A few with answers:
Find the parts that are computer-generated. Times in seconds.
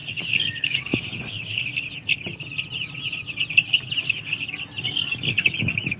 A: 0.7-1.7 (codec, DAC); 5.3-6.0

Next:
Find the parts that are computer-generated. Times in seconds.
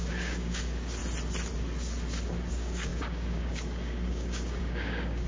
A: 0.0-1.0 (codec, DAC); 2.5-5.3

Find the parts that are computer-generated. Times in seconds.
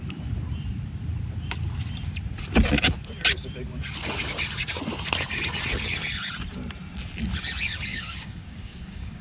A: 7.9-9.2 (codec, DAC)